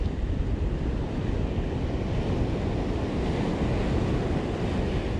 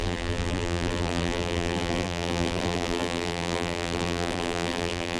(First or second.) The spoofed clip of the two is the second